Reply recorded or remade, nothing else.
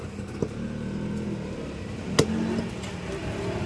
recorded